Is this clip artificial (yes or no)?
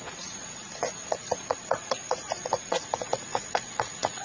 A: yes